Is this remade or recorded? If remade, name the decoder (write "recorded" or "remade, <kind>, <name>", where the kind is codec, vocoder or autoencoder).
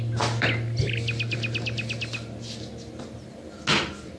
recorded